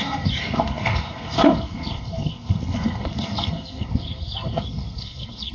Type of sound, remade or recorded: remade